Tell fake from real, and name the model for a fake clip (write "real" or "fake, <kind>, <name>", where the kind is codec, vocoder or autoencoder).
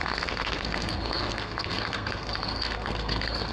fake, codec, SNAC